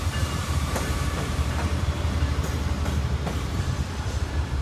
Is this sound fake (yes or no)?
yes